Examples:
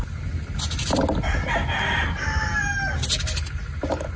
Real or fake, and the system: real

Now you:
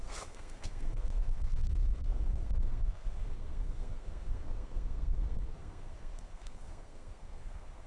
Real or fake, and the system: fake, codec, SNAC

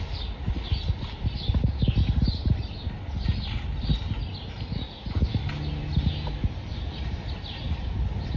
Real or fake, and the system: real